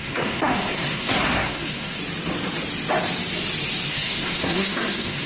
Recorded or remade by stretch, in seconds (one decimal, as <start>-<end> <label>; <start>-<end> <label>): 0.0-2.0 remade; 2.0-3.9 recorded; 3.9-5.3 remade